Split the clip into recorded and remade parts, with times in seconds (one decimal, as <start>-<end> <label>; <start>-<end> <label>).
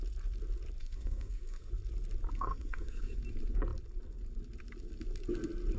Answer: 0.0-0.8 recorded; 0.8-1.7 remade; 1.7-2.3 recorded; 2.3-3.2 remade; 3.2-5.8 recorded